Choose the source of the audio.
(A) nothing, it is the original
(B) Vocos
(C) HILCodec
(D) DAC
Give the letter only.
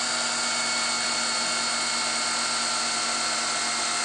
A